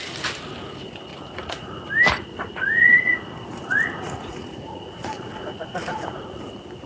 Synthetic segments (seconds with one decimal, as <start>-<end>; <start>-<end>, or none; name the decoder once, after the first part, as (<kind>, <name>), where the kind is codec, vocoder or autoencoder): 1.1-1.7 (vocoder, Vocos); 2.3-6.4